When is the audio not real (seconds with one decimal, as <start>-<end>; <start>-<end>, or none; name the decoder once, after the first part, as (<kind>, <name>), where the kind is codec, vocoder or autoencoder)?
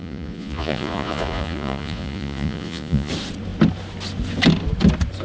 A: 0.0-3.1 (vocoder, Vocos)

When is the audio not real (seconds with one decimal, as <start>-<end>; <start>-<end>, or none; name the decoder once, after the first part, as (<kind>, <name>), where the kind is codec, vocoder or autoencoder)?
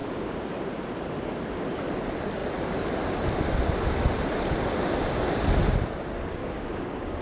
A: 0.0-0.5 (codec, DAC); 6.4-7.2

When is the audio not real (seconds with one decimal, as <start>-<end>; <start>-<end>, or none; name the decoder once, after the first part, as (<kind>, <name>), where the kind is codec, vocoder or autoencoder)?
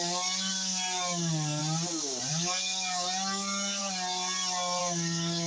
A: 0.0-1.6 (codec, DAC); 2.3-3.8; 4.8-5.5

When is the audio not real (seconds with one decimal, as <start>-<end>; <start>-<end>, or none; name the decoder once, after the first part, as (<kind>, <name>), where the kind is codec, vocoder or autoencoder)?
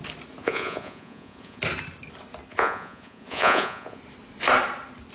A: 0.4-1.6 (vocoder, Vocos); 2.5-4.0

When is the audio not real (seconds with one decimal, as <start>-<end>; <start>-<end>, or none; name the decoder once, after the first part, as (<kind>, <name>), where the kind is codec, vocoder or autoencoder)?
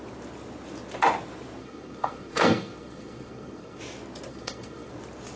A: 1.6-3.8 (codec, SNAC); 4.3-4.9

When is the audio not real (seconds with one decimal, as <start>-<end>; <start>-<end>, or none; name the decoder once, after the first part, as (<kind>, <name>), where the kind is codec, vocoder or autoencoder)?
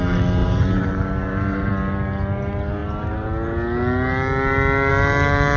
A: 0.4-1.7 (vocoder, BigVGAN v2)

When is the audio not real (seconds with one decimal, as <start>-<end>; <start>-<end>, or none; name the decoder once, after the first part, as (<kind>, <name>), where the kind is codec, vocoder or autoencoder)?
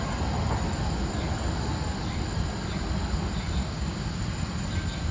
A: 3.6-4.2 (codec, DAC)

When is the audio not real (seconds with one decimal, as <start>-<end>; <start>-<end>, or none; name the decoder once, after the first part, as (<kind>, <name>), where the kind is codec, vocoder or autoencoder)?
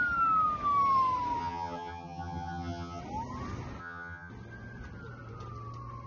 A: 1.4-3.0 (vocoder, HiFi-GAN); 3.8-4.3